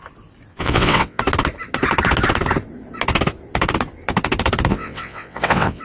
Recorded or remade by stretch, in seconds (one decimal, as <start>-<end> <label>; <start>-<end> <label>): 0.0-0.5 recorded; 0.5-1.2 remade; 1.2-4.7 recorded; 4.7-5.8 remade